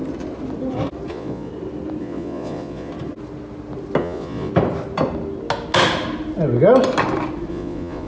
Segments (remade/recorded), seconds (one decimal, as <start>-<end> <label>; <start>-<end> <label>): 0.0-1.1 recorded; 1.1-1.5 remade; 1.5-2.0 recorded; 2.0-2.9 remade; 2.9-4.0 recorded; 4.0-4.5 remade; 4.5-7.5 recorded; 7.5-8.1 remade